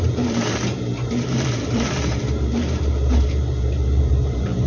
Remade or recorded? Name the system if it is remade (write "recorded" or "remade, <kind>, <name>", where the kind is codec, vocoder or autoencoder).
remade, vocoder, BigVGAN v2